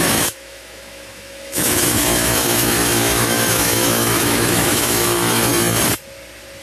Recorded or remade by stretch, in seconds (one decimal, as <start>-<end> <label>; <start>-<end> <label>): 0.0-5.5 remade; 5.5-6.6 recorded